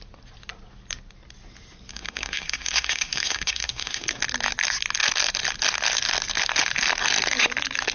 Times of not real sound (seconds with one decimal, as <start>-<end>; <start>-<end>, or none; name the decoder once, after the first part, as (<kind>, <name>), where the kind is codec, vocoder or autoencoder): 1.9-4.2 (codec, SNAC)